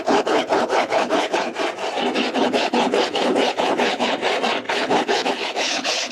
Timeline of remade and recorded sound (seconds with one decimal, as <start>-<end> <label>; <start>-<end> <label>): 0.0-1.5 remade; 1.5-2.3 recorded; 2.3-4.2 remade; 4.2-4.7 recorded; 4.7-6.1 remade

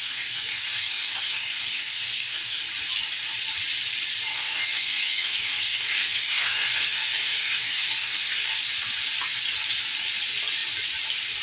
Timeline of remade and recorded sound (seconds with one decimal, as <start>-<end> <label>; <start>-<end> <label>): 0.0-2.6 remade; 2.6-4.3 recorded; 4.3-8.6 remade; 8.6-11.4 recorded

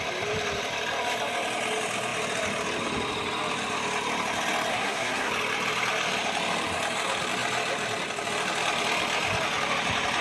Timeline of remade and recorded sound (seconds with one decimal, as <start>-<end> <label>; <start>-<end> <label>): 0.0-4.7 recorded; 4.7-5.3 remade; 5.3-10.2 recorded

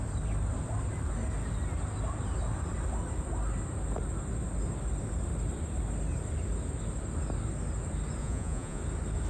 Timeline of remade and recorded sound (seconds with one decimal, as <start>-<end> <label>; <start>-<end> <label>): 0.0-8.2 recorded; 8.2-8.8 remade; 8.8-9.3 recorded

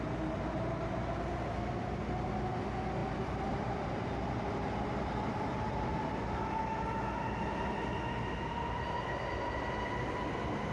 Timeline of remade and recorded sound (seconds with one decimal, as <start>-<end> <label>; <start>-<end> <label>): 0.0-3.0 recorded; 3.0-5.9 remade; 5.9-10.7 recorded

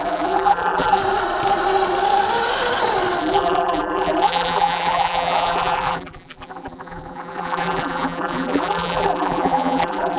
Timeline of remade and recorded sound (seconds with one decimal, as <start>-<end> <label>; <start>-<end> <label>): 0.0-1.0 remade; 1.0-3.2 recorded; 3.2-10.2 remade